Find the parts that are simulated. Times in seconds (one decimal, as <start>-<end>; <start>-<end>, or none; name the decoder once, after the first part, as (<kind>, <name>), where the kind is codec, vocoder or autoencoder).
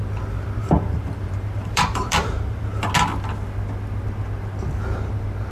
0.6-2.9 (vocoder, BigVGAN v2)